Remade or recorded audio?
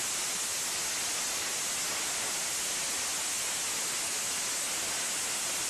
recorded